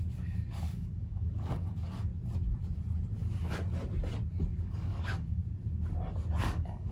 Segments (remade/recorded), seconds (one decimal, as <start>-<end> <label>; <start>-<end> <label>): 0.0-2.1 remade; 2.1-4.5 recorded; 4.5-5.4 remade; 5.4-6.4 recorded; 6.4-6.9 remade